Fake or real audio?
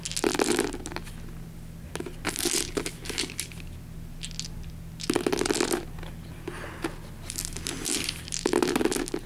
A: real